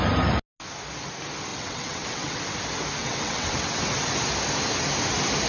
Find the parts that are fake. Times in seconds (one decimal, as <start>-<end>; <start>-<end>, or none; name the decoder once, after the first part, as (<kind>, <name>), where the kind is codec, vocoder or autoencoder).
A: 1.5-2.4 (vocoder, WaveNeXt); 3.0-3.8